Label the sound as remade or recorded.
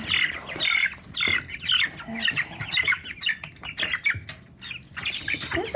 recorded